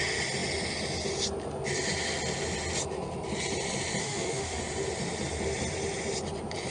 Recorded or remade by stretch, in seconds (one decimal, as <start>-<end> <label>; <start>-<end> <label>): 0.0-4.0 recorded; 4.0-4.6 remade; 4.6-6.7 recorded